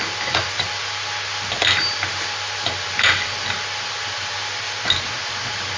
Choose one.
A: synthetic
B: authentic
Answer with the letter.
B